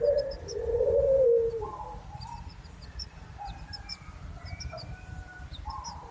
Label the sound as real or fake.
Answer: real